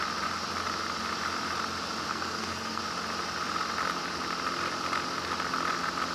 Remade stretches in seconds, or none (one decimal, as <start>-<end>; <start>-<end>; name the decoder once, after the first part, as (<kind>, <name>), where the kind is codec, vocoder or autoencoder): 2.1-2.8 (codec, SNAC)